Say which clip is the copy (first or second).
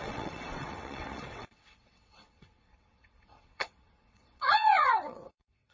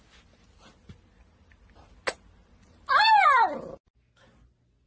first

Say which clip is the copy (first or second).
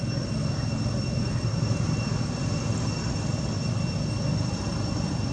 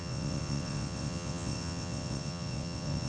second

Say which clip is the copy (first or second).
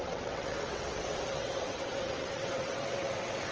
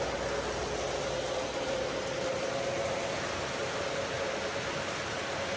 first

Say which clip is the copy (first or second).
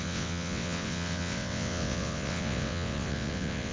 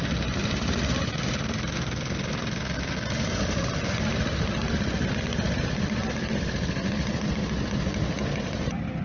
first